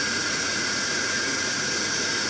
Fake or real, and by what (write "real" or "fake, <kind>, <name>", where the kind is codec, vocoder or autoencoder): fake, vocoder, Vocos